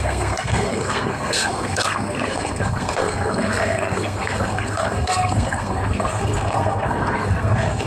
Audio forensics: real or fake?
fake